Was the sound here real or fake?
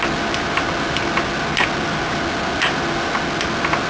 real